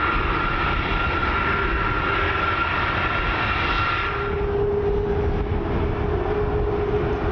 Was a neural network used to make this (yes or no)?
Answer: no